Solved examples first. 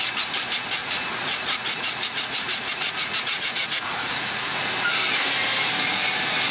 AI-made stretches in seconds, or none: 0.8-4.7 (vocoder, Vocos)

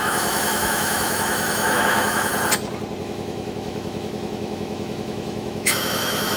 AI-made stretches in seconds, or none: 0.0-2.3 (autoencoder, DAC-VAE); 3.0-6.4

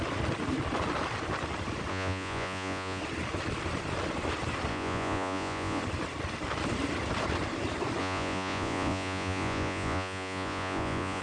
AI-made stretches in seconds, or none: 1.9-3.0 (vocoder, Vocos); 4.7-5.8; 8.0-11.2

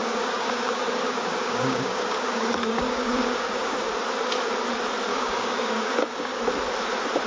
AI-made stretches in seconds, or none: 0.0-3.9 (codec, DAC); 5.1-6.4

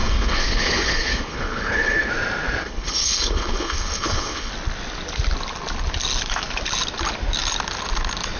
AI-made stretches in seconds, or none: 0.0-2.1 (codec, HILCodec); 2.6-4.5

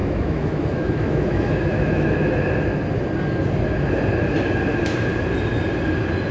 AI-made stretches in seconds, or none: 0.0-2.4 (autoencoder, DAC-VAE)